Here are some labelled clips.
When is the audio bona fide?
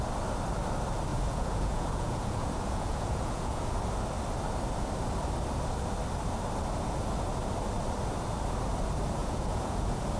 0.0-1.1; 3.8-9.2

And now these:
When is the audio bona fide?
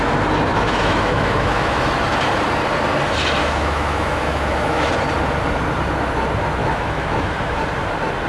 0.0-0.5; 1.8-3.4; 4.9-6.6; 7.6-8.3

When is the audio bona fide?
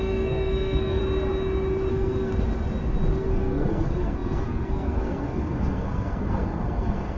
1.0-1.9; 2.3-3.2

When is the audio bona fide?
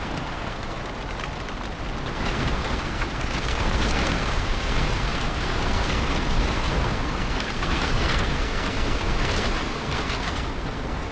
0.8-2.1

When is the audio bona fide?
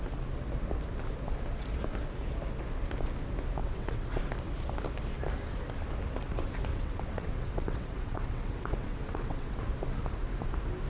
0.0-3.6; 4.2-6.7; 9.6-10.9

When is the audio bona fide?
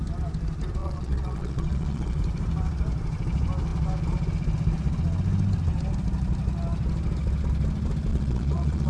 0.0-0.8; 2.2-8.1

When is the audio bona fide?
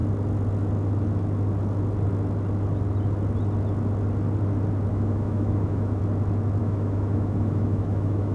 0.0-4.9; 6.0-6.6